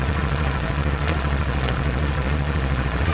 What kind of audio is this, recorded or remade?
remade